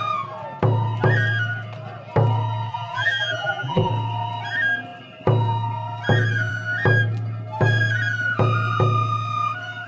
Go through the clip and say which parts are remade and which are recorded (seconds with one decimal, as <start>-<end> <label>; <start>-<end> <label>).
0.0-2.7 recorded; 2.7-3.9 remade; 3.9-9.9 recorded